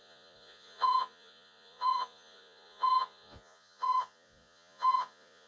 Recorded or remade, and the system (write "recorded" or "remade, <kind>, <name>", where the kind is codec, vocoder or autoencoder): remade, vocoder, Vocos